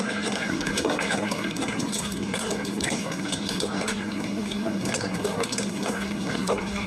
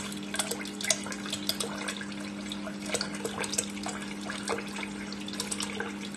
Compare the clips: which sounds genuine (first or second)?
second